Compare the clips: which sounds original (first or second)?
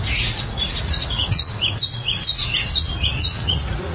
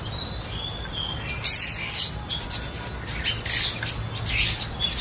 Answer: second